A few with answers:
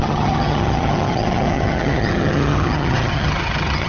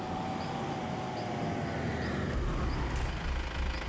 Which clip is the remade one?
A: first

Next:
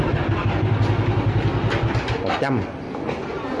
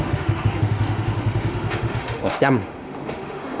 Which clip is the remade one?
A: second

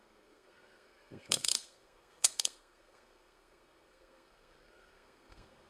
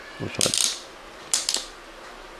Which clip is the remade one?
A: first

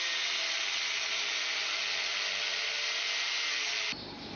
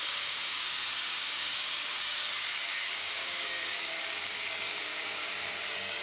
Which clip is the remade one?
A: second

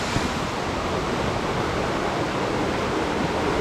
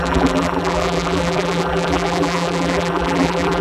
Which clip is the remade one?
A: second